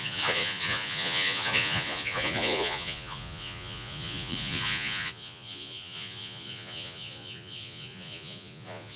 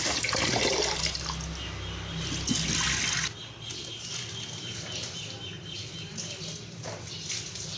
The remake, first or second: first